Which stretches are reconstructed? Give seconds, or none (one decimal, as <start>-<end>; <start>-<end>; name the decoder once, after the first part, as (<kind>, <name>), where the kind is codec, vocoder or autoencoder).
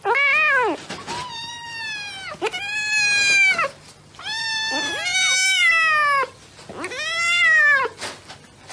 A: none